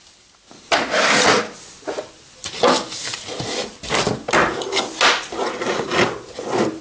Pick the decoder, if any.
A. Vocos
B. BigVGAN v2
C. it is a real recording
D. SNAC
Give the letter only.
C